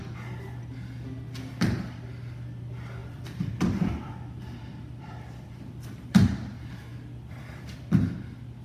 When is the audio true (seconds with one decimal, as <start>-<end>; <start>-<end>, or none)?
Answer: 0.0-3.0; 5.6-6.9; 7.8-8.6